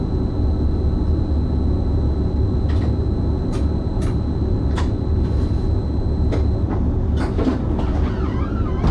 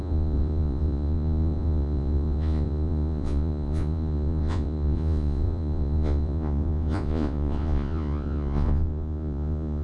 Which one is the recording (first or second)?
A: first